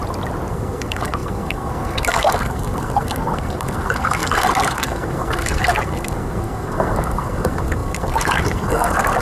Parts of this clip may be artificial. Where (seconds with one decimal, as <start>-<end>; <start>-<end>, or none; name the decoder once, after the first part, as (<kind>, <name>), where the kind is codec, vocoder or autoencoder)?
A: 0.5-9.2 (codec, SNAC)